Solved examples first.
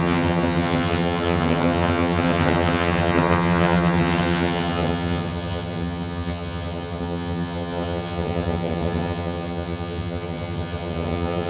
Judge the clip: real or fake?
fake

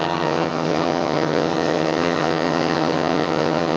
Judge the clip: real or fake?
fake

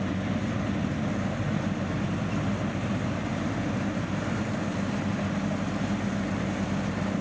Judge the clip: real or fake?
real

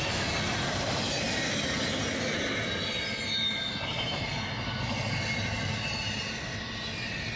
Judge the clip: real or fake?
real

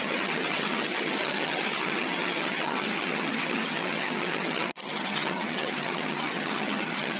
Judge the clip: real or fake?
fake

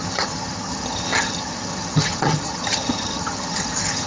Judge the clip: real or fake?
fake